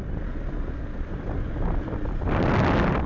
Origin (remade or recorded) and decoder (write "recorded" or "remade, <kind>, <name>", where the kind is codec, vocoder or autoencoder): recorded